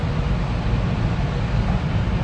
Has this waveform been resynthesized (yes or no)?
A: no